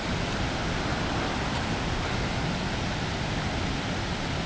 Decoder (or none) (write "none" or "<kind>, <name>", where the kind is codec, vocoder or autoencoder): none